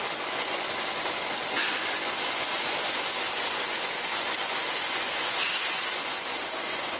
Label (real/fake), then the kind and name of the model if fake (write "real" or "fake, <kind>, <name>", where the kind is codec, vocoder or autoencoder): fake, vocoder, Vocos